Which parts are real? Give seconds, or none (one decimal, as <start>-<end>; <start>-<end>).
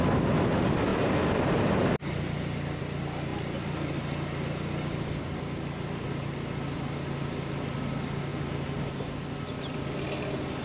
0.0-10.6